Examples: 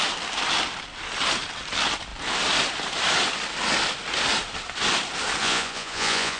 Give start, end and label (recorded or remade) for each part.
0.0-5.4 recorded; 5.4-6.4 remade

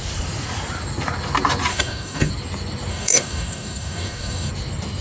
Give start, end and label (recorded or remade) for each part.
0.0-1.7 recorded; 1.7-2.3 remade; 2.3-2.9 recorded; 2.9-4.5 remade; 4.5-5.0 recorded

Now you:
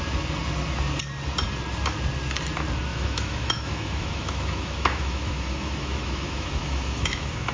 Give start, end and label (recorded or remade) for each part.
0.0-2.9 recorded; 2.9-7.5 remade